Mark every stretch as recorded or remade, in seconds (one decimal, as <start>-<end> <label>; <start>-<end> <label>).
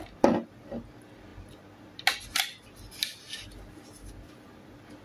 0.0-5.0 recorded